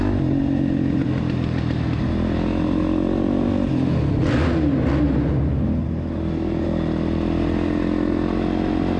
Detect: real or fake real